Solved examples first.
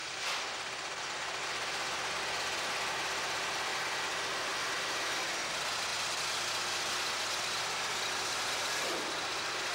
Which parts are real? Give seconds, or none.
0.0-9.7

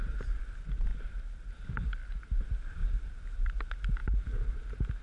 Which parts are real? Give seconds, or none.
0.0-0.9; 1.5-2.8; 3.5-4.0; 4.6-5.0

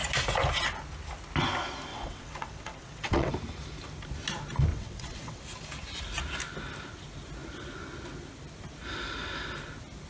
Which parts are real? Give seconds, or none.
0.0-1.9; 3.3-4.7; 5.4-10.1

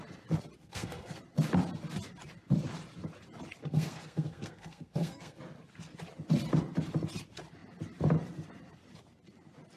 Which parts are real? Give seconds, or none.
0.0-0.6; 1.2-3.6; 5.4-9.8

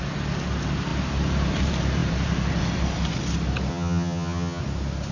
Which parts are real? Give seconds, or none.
0.0-3.7; 4.6-5.1